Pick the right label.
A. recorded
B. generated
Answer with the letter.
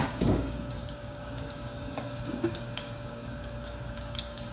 B